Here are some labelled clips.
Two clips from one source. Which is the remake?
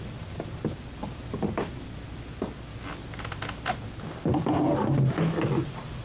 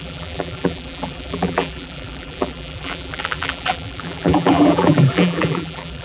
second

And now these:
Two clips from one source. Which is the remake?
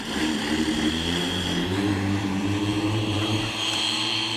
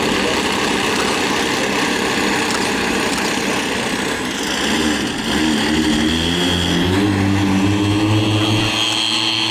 first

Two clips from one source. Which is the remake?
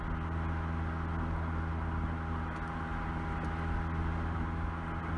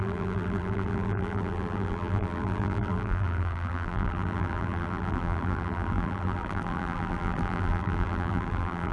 second